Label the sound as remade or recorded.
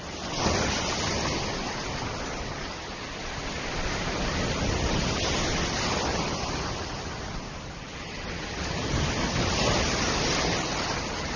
recorded